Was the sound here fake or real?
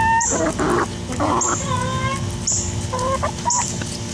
real